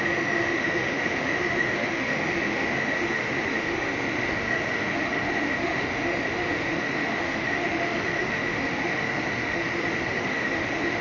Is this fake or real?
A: fake